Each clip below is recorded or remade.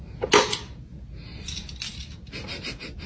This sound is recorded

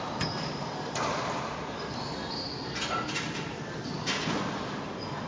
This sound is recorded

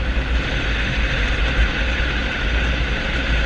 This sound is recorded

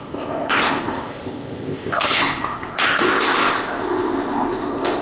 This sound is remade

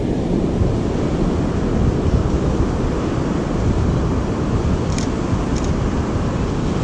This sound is recorded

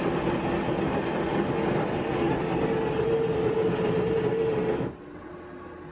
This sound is recorded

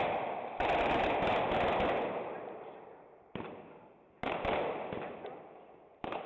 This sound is recorded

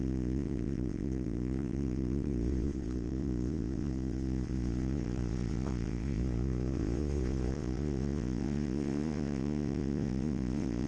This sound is remade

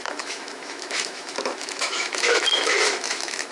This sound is remade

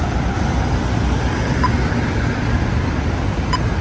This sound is recorded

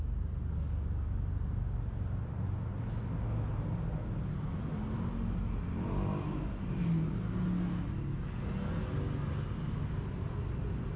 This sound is recorded